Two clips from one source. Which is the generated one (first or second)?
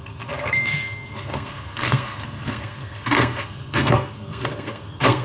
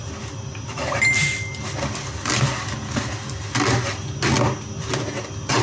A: first